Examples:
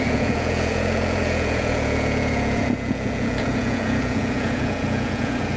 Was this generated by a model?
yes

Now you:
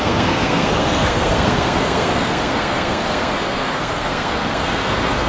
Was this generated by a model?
yes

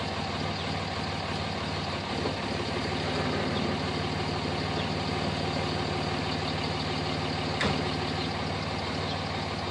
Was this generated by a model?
no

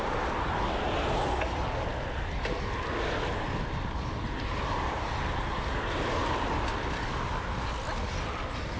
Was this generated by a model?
no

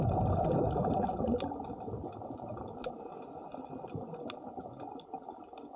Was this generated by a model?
no